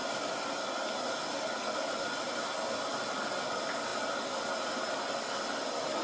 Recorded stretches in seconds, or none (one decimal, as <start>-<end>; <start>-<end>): 0.0-6.0